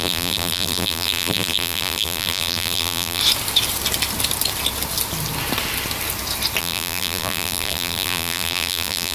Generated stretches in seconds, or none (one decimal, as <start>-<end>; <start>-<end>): 0.0-3.2; 6.6-9.1